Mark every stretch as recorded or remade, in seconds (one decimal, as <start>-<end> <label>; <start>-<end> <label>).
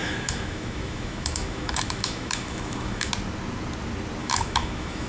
0.0-3.1 remade; 3.1-4.2 recorded; 4.2-5.1 remade